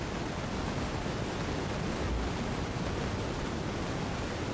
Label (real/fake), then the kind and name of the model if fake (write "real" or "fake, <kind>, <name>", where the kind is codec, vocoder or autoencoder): real